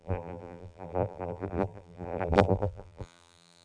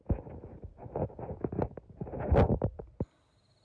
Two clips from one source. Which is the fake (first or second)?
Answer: first